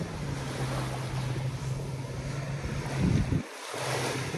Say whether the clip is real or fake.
real